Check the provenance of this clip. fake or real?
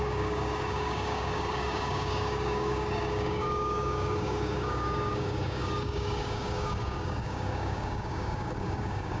fake